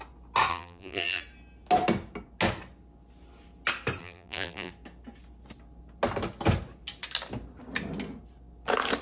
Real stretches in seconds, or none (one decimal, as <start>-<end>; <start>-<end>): 0.0-0.5; 1.2-4.0; 4.7-9.0